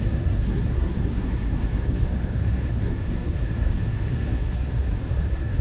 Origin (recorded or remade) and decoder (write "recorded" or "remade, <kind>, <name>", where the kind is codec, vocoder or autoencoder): remade, codec, SNAC